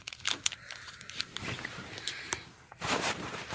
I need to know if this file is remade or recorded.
remade